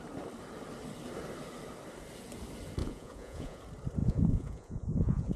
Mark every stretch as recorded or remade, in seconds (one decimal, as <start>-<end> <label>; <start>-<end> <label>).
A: 0.0-2.8 recorded; 2.8-3.6 remade; 3.6-4.0 recorded; 4.0-5.4 remade